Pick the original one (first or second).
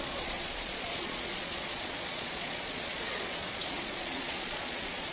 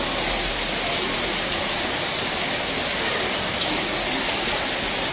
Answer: second